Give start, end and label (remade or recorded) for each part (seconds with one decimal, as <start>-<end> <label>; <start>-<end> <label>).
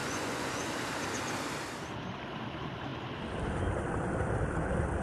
0.0-0.7 remade; 0.7-5.0 recorded